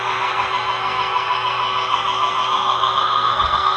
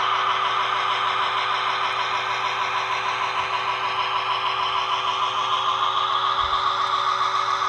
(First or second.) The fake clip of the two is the first